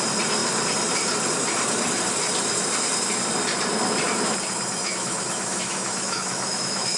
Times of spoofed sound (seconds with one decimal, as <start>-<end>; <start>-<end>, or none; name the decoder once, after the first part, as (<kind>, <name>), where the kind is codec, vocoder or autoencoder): 4.8-7.0 (autoencoder, DAC-VAE)